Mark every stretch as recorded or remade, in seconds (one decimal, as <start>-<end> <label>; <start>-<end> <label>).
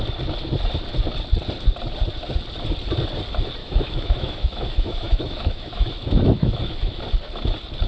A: 0.0-3.6 recorded; 3.6-7.0 remade; 7.0-7.9 recorded